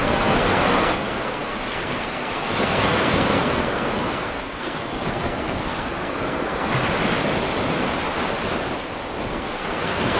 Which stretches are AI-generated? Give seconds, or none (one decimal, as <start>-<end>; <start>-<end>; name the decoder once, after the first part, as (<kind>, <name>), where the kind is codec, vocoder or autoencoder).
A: 0.0-6.7 (codec, SNAC); 9.2-10.2

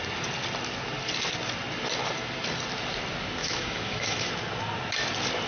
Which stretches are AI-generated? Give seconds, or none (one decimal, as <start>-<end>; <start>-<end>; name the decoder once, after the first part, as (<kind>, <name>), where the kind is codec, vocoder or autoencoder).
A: 3.4-4.3 (autoencoder, DAC-VAE)

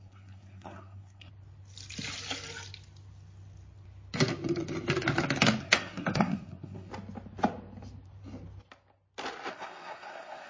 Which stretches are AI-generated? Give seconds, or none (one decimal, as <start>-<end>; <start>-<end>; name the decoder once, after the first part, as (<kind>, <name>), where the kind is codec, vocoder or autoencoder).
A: 0.0-1.3 (codec, SNAC); 5.6-6.9; 9.5-10.5

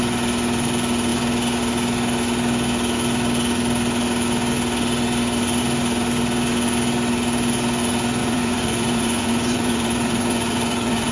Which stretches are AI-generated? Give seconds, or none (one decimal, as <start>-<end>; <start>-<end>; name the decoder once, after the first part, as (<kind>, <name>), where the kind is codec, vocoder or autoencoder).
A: 8.2-11.1 (vocoder, Vocos)

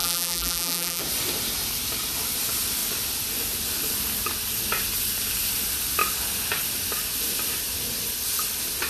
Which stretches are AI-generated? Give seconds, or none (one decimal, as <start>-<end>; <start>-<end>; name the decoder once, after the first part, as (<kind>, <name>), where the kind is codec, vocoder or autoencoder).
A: 0.0-1.0 (vocoder, BigVGAN v2)

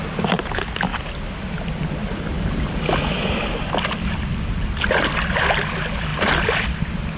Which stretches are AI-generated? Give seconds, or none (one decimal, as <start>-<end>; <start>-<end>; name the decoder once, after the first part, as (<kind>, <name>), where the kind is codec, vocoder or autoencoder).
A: none

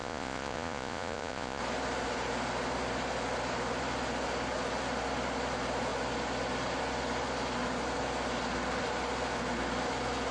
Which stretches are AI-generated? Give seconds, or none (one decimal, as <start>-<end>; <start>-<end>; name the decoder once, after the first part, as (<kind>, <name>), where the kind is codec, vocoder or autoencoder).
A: 0.0-1.6 (vocoder, Vocos)

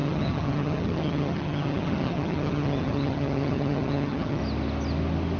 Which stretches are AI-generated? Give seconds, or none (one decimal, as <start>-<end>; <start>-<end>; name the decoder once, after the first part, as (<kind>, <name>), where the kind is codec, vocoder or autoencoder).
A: 0.0-4.4 (vocoder, HiFi-GAN)